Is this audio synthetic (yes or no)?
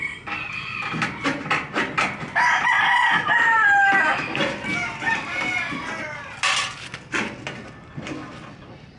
no